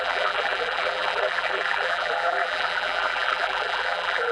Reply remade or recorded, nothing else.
remade